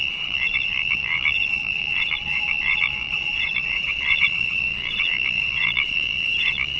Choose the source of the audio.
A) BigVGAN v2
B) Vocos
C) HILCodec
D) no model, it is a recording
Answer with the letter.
B